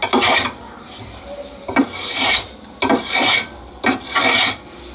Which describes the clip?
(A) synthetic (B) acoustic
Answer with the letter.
A